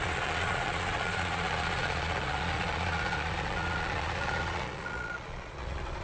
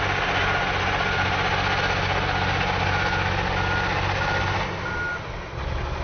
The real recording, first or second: second